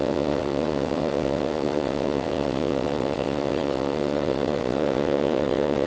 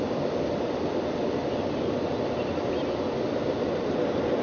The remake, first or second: first